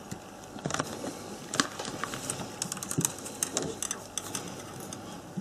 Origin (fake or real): real